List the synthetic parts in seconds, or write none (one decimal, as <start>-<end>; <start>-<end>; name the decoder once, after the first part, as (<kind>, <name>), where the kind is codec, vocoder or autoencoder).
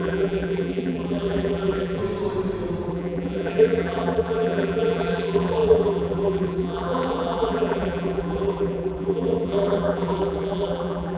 0.0-2.0 (vocoder, BigVGAN v2); 2.9-11.2